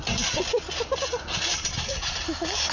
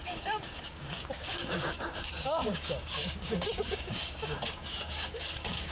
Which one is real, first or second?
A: first